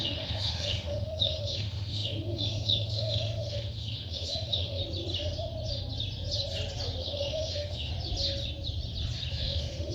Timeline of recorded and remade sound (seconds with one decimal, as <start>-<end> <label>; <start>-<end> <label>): 0.0-4.8 remade; 4.8-7.0 recorded; 7.0-7.9 remade; 7.9-9.3 recorded; 9.3-9.9 remade